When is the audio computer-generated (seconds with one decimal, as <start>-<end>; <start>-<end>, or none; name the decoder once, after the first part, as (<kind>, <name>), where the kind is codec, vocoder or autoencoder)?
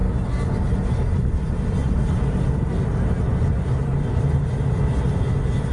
none